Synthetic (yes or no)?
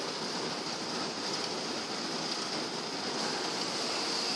no